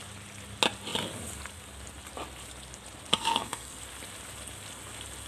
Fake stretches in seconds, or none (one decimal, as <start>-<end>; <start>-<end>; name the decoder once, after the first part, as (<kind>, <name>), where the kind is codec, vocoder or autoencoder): 3.1-3.8 (codec, SNAC)